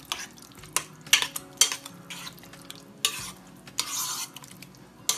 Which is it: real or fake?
real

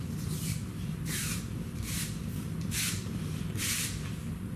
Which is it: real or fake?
fake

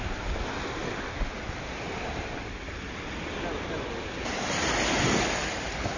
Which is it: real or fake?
real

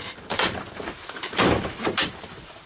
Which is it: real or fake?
fake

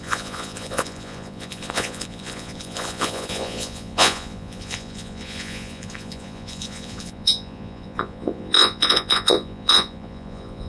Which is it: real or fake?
fake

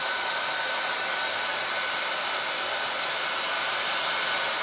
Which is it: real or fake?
real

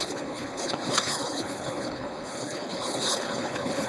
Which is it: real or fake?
fake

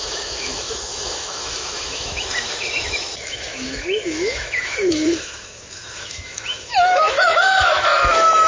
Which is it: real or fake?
fake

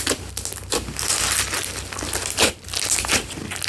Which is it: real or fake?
real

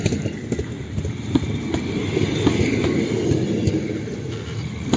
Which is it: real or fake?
real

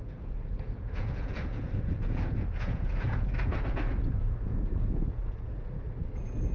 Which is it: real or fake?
fake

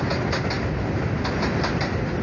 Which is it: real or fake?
real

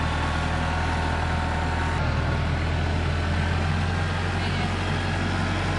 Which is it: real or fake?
real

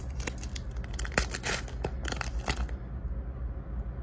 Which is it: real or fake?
real